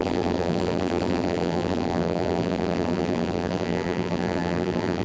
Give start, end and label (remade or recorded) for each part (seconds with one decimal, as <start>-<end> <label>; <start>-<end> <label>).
0.0-5.0 remade